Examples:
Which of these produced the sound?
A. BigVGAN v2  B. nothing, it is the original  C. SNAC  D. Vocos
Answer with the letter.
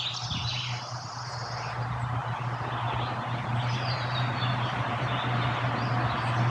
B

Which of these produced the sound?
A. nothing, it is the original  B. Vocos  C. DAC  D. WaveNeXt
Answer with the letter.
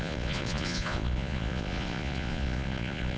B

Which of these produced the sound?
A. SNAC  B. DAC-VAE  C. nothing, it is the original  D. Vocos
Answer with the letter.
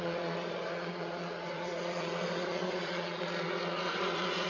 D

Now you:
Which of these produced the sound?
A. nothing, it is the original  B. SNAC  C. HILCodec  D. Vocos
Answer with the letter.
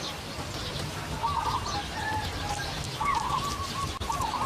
A